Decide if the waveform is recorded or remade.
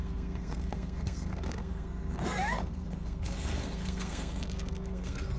remade